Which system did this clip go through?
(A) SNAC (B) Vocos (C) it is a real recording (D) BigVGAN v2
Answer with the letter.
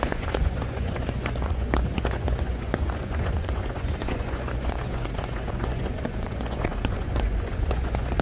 B